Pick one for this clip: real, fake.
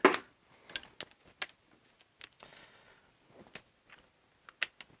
real